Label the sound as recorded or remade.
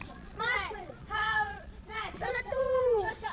remade